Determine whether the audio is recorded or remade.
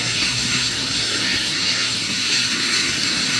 remade